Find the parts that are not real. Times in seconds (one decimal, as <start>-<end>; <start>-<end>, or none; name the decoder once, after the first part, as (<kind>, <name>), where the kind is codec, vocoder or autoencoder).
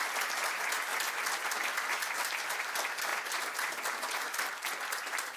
none